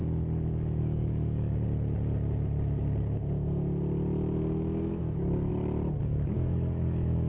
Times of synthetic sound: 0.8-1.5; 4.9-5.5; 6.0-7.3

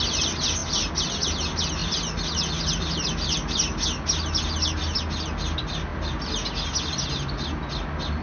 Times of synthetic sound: none

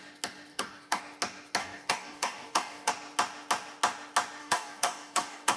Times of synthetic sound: 0.5-1.0; 1.6-2.9; 4.4-5.6

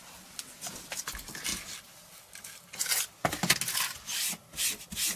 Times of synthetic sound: none

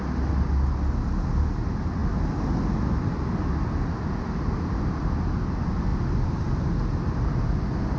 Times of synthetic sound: none

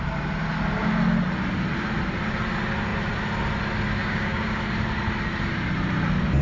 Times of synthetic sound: 4.0-4.6